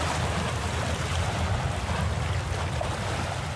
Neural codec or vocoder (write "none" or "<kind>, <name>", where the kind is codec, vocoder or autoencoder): none